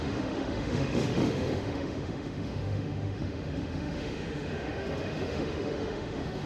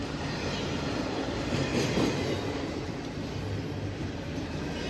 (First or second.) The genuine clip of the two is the second